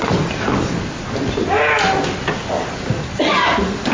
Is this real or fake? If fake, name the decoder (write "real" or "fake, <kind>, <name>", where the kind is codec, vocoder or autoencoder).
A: real